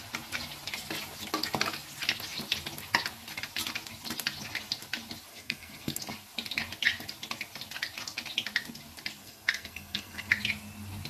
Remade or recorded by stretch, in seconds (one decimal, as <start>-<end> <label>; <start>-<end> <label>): 0.0-5.3 recorded; 5.3-6.0 remade; 6.0-9.2 recorded; 9.2-10.3 remade; 10.3-11.1 recorded